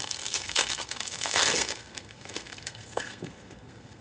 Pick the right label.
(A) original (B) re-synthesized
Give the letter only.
B